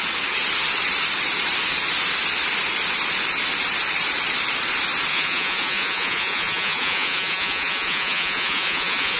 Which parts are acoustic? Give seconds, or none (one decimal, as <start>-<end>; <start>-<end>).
0.0-5.1